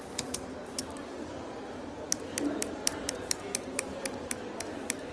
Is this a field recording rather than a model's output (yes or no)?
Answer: no